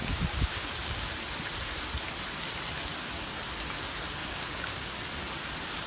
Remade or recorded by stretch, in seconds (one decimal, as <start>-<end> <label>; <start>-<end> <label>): 0.0-1.1 remade; 1.1-4.2 recorded; 4.2-5.0 remade; 5.0-5.9 recorded